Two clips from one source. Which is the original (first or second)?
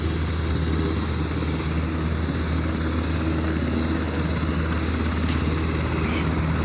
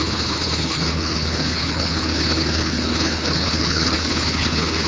first